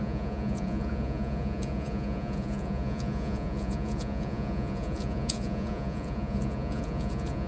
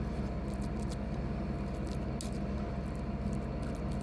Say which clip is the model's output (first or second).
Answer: first